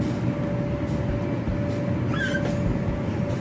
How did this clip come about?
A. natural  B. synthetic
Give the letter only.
A